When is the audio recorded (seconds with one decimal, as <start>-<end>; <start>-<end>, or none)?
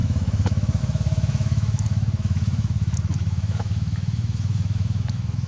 none